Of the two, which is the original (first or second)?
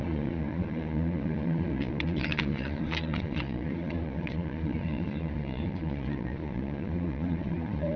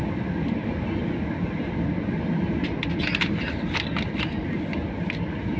second